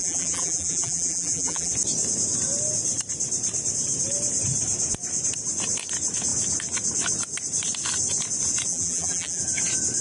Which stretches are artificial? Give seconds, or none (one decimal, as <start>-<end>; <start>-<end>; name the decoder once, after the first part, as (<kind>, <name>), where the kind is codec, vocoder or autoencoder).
0.0-1.7 (vocoder, BigVGAN v2); 8.7-9.4

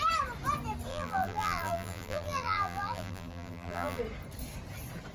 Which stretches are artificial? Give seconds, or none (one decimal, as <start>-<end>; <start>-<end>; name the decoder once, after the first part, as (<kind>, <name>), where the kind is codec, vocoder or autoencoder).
0.9-4.0 (vocoder, BigVGAN v2)

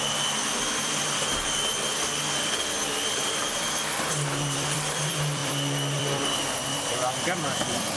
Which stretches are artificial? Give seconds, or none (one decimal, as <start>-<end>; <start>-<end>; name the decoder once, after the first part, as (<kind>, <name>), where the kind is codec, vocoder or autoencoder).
0.0-1.7 (vocoder, BigVGAN v2); 3.0-8.0